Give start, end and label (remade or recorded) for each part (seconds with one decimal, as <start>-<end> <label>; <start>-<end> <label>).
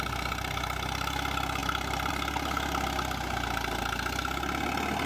0.0-1.6 recorded; 1.6-2.1 remade; 2.1-5.1 recorded